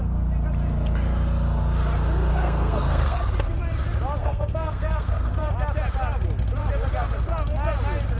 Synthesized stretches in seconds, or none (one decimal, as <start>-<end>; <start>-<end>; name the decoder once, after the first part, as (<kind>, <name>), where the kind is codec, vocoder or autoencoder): 2.3-3.2 (codec, SNAC); 4.2-5.5